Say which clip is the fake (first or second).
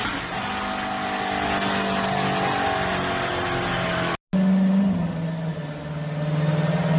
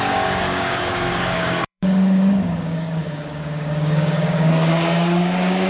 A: second